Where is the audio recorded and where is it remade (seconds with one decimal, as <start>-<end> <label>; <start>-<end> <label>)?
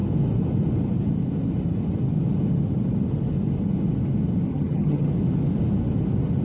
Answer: 0.0-4.5 recorded; 4.5-5.1 remade; 5.1-6.4 recorded